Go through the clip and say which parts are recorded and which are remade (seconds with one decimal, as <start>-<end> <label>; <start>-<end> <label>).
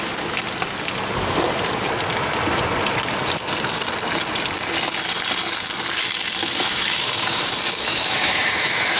0.0-6.4 recorded; 6.4-7.4 remade; 7.4-7.9 recorded; 7.9-9.0 remade